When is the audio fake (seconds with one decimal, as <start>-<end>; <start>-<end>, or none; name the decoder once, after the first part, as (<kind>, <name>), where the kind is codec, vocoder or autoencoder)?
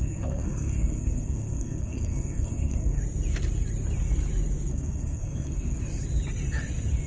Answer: 0.0-3.0 (codec, SNAC); 4.7-5.8